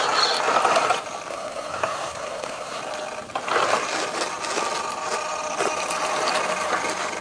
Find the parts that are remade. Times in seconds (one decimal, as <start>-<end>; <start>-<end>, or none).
1.3-2.8